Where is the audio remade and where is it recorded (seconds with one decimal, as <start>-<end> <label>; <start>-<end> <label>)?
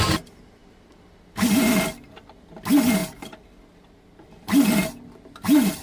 0.0-5.8 recorded